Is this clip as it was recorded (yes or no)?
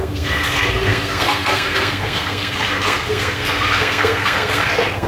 no